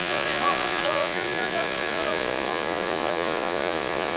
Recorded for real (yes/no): no